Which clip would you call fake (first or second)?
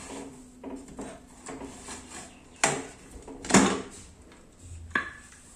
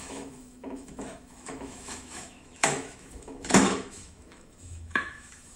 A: second